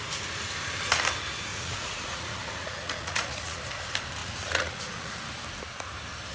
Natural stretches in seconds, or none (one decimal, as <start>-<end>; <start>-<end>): 0.0-1.5; 3.6-4.2; 5.2-6.3